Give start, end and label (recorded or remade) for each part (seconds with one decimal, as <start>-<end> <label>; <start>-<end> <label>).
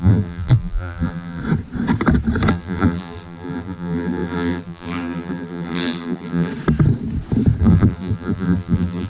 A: 0.0-1.4 remade; 1.4-2.5 recorded; 2.5-6.5 remade; 6.5-7.6 recorded; 7.6-9.1 remade